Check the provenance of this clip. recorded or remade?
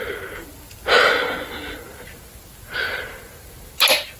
recorded